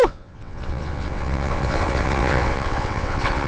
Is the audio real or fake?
fake